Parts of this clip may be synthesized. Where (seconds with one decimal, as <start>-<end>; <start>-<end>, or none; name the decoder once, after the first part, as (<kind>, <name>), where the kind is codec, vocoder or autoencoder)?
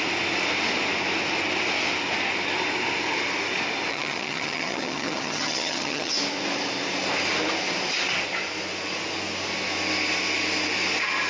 3.9-6.1 (vocoder, HiFi-GAN)